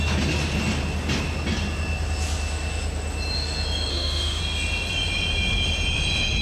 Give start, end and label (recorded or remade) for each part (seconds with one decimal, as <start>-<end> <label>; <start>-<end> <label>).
0.0-3.9 recorded; 3.9-4.4 remade; 4.4-6.4 recorded